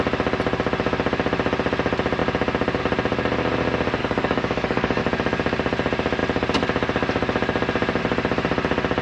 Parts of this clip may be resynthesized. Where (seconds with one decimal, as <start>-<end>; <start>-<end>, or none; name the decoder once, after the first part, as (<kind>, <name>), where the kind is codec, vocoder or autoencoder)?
4.0-5.0 (codec, DAC)